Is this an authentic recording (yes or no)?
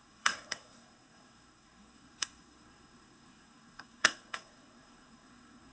no